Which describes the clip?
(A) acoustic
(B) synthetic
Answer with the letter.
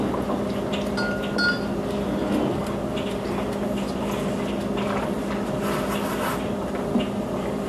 A